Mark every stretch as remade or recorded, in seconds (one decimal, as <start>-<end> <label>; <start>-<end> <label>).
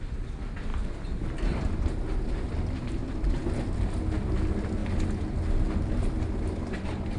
0.0-7.2 recorded